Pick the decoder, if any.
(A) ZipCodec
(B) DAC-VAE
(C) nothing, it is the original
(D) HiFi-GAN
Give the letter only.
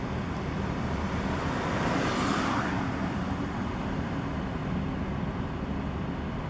C